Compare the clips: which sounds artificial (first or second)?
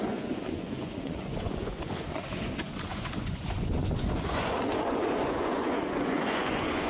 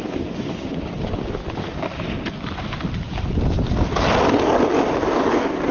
first